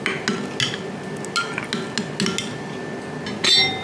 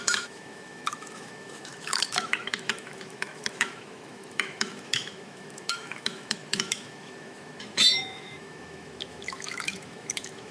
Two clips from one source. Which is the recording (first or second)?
first